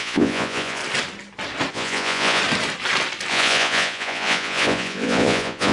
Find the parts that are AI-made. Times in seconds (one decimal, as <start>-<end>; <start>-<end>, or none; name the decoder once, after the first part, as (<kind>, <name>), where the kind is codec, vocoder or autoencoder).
0.0-0.8 (vocoder, Vocos); 1.7-2.4; 3.3-5.7